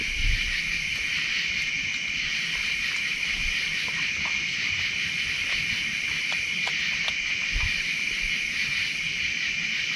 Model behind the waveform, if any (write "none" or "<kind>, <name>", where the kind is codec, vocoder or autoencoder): none